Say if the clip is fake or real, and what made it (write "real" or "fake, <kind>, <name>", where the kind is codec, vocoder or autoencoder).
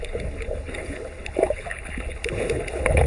fake, codec, HILCodec